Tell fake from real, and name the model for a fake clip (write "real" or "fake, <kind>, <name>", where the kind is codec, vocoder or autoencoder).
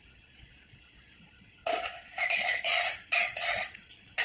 fake, vocoder, Vocos